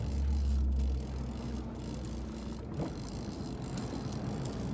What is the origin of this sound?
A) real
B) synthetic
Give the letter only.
A